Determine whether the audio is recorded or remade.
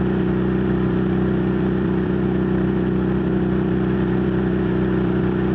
remade